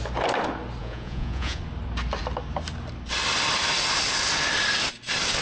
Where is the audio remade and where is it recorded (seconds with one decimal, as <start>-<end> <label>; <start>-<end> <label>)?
0.0-0.8 recorded; 0.8-1.6 remade; 1.6-5.4 recorded